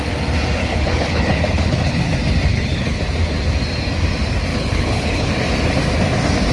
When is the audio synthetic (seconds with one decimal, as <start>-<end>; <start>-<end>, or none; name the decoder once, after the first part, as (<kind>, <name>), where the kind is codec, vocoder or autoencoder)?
0.6-2.0 (codec, HILCodec); 2.5-3.0; 4.5-5.3